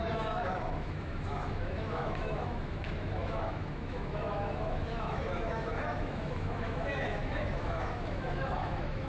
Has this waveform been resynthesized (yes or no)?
yes